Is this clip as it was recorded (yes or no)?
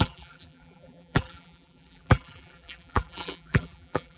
no